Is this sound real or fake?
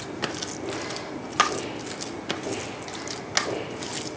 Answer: real